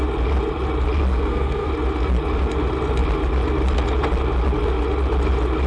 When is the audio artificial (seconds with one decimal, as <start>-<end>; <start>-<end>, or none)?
1.1-1.7